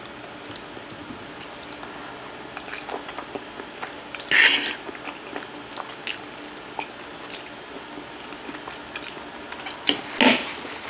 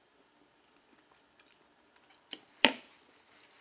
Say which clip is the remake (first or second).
second